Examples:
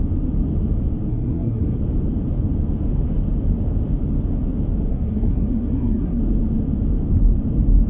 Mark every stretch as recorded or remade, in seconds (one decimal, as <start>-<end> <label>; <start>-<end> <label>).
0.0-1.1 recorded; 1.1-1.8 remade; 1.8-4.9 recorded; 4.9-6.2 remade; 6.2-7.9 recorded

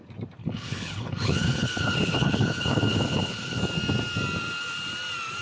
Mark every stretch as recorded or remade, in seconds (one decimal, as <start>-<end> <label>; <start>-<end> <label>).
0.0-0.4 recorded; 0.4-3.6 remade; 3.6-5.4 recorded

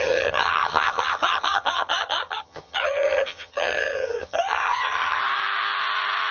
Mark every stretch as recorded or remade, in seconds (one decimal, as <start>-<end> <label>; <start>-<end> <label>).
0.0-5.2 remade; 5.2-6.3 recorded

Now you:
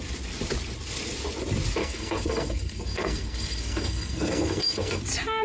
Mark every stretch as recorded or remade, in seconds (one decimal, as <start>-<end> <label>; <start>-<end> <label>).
0.0-1.8 recorded; 1.8-5.0 remade; 5.0-5.4 recorded

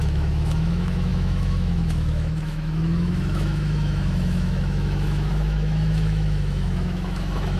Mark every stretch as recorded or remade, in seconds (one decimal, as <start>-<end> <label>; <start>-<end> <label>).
0.0-7.6 remade

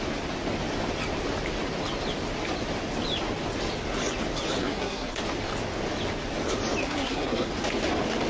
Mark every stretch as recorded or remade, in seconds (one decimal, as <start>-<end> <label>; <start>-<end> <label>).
0.0-4.6 recorded; 4.6-5.2 remade; 5.2-6.8 recorded; 6.8-7.5 remade; 7.5-8.3 recorded

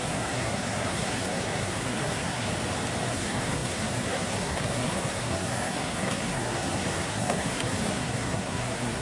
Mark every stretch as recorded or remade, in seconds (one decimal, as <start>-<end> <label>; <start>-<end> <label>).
0.0-2.5 remade; 2.5-3.1 recorded; 3.1-9.0 remade